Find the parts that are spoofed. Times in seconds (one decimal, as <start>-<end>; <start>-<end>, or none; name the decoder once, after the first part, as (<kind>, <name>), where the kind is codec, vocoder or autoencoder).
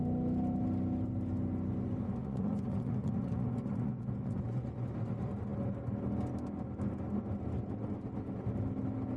2.2-4.9 (vocoder, Vocos)